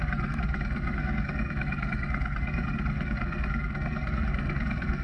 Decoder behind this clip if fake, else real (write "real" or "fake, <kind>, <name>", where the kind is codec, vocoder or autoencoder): fake, codec, SNAC